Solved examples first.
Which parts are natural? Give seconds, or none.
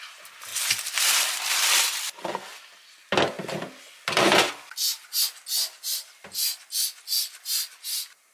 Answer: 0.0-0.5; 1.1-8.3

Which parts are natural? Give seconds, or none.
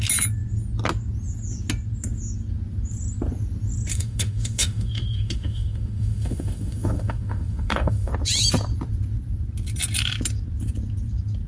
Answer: 0.0-3.9; 8.1-11.5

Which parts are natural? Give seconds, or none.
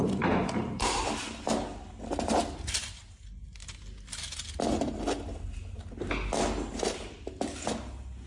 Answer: 1.0-8.3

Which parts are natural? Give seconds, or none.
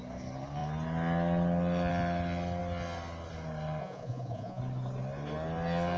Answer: 0.0-3.8; 4.6-6.0